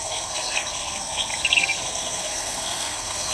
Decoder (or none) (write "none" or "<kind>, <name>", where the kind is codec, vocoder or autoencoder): codec, SNAC